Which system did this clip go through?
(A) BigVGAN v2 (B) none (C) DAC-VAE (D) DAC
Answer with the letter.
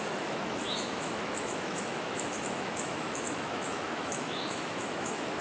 C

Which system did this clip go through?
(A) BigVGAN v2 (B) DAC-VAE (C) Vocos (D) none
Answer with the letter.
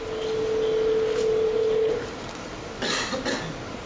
D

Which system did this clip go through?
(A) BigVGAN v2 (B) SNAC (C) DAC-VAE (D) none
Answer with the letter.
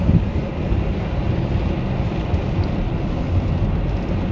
D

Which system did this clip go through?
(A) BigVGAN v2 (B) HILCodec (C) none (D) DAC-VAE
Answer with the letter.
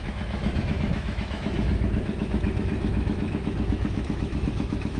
D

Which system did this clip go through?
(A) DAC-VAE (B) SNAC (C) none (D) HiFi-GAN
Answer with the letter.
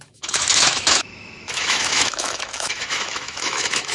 A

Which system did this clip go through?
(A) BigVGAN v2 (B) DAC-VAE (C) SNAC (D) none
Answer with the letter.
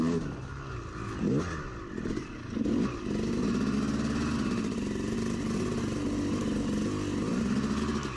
D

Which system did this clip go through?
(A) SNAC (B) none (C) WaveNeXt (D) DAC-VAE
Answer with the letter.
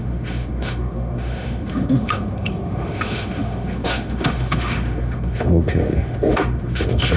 D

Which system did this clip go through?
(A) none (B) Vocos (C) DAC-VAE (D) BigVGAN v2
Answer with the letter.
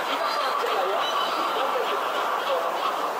A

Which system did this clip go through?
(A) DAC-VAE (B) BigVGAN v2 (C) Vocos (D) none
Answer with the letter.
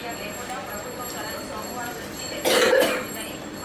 D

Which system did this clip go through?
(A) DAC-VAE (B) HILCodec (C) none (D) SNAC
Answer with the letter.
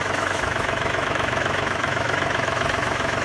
A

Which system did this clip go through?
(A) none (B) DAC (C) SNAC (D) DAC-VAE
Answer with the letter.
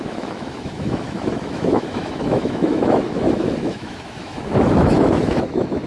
D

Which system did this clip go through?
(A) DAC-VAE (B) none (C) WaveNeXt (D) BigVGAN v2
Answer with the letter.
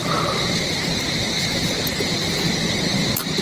B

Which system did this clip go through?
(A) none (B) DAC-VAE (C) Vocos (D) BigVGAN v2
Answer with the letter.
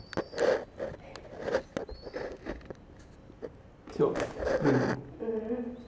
A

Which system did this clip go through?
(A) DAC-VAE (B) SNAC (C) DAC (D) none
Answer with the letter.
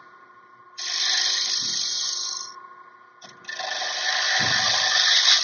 D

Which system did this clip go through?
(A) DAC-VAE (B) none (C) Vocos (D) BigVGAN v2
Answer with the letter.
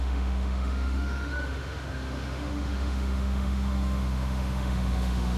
A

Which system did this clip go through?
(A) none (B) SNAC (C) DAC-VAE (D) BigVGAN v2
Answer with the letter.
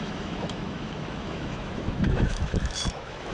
C